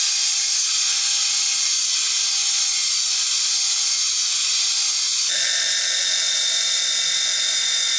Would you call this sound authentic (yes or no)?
yes